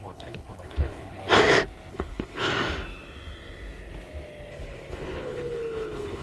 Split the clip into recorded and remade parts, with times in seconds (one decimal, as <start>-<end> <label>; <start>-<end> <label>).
0.0-1.2 remade; 1.2-1.9 recorded; 1.9-2.5 remade; 2.5-4.5 recorded; 4.5-6.2 remade